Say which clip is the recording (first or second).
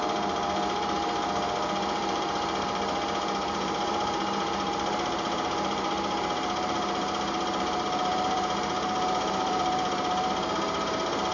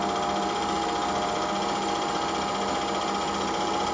second